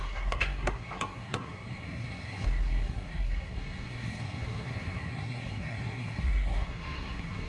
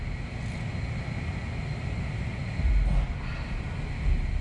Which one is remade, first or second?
first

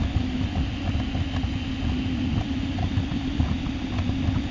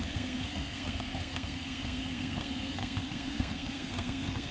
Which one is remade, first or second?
second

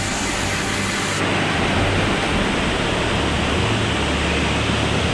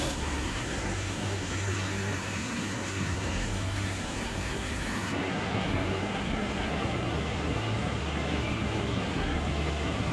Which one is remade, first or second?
second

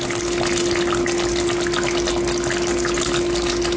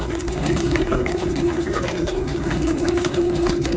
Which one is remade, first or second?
second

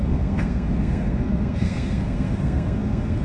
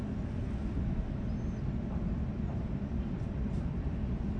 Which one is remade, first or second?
first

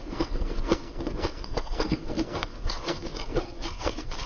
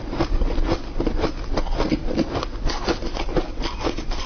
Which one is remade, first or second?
first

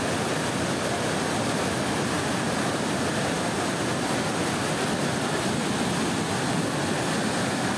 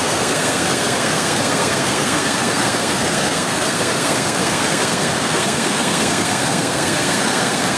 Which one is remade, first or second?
second